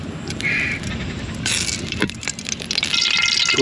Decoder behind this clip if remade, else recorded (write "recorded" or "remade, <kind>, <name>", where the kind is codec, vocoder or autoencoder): recorded